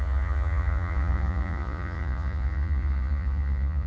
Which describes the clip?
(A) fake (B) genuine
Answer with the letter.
A